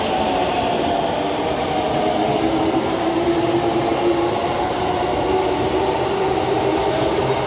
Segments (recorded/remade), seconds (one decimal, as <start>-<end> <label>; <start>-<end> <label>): 0.0-7.5 recorded